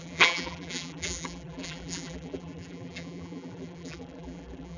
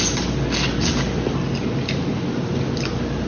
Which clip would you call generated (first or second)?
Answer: first